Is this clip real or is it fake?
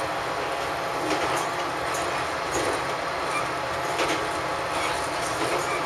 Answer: real